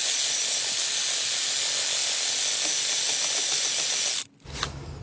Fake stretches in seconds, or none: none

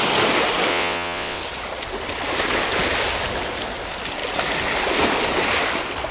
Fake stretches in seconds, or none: 0.7-1.4 (vocoder, WaveNeXt)

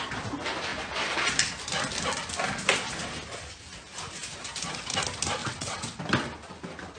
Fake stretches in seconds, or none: 5.4-6.0 (vocoder, WaveNeXt)

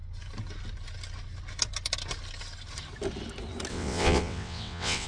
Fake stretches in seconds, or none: 3.7-5.1 (vocoder, WaveNeXt)

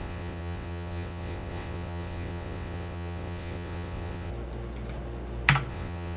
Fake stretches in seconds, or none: 0.0-4.3 (vocoder, WaveNeXt); 5.7-6.2

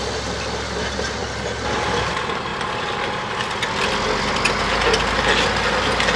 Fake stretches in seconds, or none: none

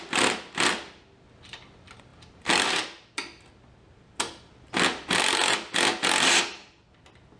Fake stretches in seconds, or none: none

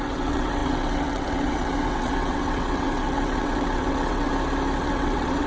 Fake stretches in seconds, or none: 0.0-4.3 (vocoder, WaveNeXt); 4.8-5.5